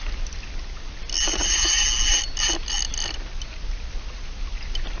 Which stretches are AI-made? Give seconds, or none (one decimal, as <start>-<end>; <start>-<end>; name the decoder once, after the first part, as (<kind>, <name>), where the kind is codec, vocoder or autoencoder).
1.3-1.8 (vocoder, Vocos)